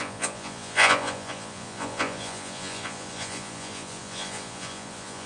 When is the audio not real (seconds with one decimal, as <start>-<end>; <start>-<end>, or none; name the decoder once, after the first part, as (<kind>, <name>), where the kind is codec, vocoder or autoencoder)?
0.0-5.3 (vocoder, Vocos)